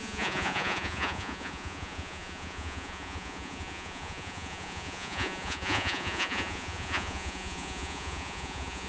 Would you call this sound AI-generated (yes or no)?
yes